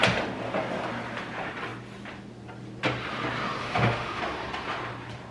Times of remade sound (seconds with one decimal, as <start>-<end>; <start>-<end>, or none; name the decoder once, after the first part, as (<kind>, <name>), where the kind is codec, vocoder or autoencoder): 3.6-4.2 (autoencoder, DAC-VAE)